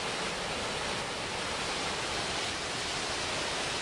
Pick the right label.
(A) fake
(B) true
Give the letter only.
B